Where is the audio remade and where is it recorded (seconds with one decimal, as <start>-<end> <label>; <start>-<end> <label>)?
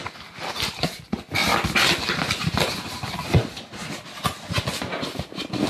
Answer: 0.0-5.7 recorded